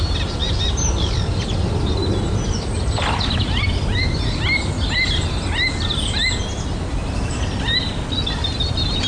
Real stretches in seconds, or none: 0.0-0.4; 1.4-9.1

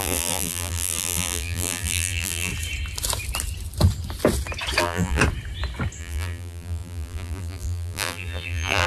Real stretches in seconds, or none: 2.5-4.8; 5.2-6.0

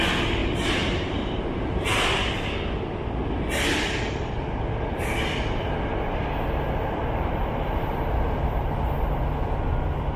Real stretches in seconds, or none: 0.0-0.4; 1.4-7.0; 7.9-10.2